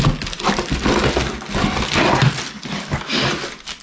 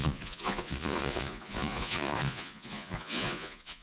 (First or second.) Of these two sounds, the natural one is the first